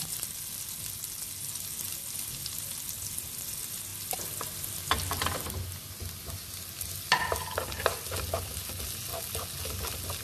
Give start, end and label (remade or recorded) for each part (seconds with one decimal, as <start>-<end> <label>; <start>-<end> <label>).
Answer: 0.0-10.2 recorded